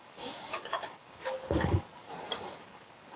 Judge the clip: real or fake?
fake